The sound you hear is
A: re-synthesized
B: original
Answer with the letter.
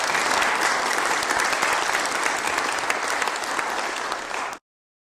B